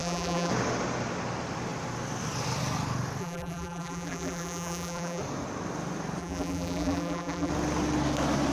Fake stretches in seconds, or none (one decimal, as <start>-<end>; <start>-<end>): 0.0-0.5; 3.2-5.2; 6.2-7.5